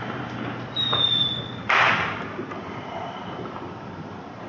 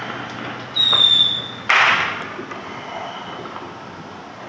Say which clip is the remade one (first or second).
first